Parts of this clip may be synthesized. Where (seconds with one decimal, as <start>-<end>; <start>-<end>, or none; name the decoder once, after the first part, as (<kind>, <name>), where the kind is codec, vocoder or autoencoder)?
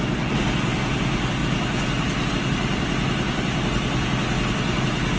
none